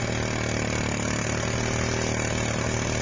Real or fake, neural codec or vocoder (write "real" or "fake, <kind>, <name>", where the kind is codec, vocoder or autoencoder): real